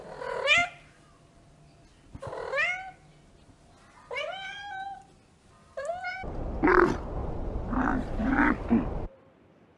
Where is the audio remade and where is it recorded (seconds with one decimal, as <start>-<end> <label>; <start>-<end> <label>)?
0.0-7.2 recorded; 7.2-8.5 remade; 8.5-9.8 recorded